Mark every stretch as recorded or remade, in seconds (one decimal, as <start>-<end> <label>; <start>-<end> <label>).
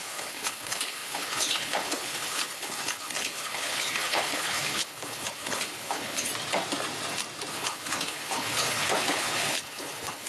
0.0-6.3 remade; 6.3-7.5 recorded; 7.5-10.3 remade